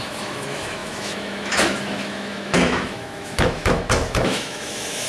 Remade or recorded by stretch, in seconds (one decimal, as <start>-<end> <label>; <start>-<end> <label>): 0.0-5.1 remade